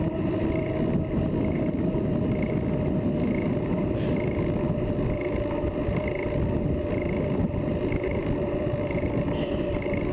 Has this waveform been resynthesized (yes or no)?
no